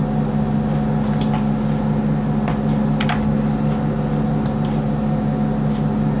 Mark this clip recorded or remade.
recorded